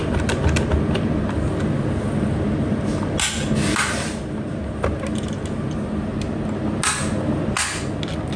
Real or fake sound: real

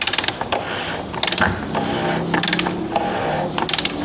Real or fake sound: real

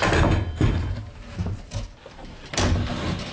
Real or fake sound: real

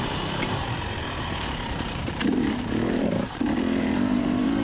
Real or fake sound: fake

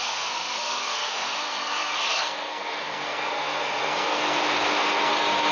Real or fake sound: fake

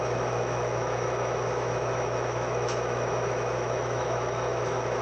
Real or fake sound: fake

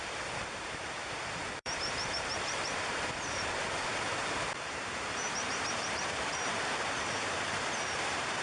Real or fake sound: fake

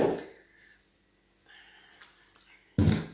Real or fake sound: real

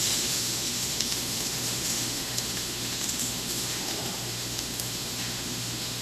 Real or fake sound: fake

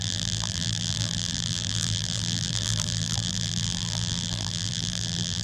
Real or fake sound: fake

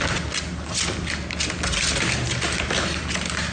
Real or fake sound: real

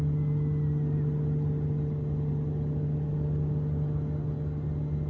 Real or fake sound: real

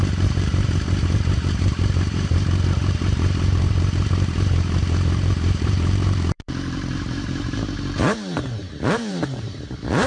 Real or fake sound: fake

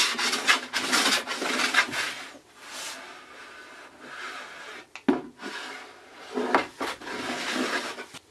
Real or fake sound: real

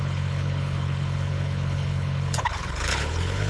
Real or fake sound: fake